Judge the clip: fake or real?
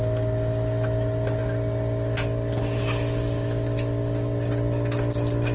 real